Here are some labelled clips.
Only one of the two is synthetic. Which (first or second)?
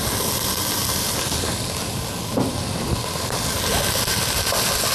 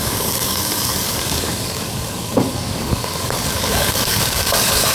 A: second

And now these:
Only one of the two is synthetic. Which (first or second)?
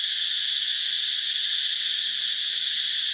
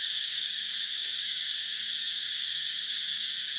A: second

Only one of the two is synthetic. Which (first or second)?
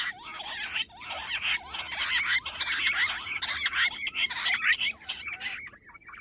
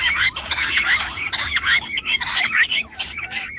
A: second